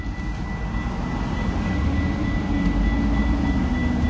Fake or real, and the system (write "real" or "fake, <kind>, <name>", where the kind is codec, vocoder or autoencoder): real